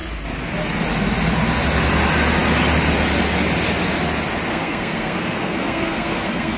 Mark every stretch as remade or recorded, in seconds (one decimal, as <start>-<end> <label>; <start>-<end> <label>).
0.0-4.5 recorded; 4.5-6.6 remade